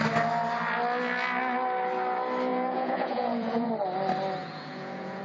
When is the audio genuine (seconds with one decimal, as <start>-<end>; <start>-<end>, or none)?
0.0-2.5; 3.7-4.4